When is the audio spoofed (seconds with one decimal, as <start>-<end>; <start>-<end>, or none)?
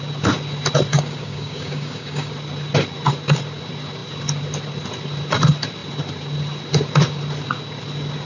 0.9-2.3